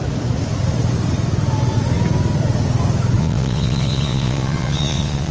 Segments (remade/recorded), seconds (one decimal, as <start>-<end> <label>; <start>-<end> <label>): 0.0-3.2 recorded; 3.2-5.3 remade